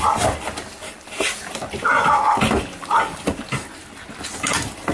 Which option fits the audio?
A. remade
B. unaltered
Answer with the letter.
B